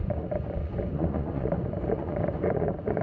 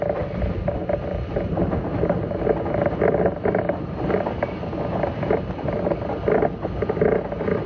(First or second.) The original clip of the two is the second